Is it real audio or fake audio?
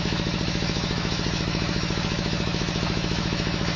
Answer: fake